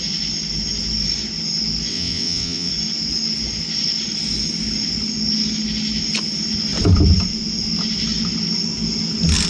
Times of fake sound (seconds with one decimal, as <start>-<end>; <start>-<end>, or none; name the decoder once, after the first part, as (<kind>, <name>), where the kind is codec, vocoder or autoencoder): 1.9-2.7 (vocoder, WaveNeXt)